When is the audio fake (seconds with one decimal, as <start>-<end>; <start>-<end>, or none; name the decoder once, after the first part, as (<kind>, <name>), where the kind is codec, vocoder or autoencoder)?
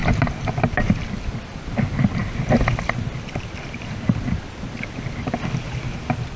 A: none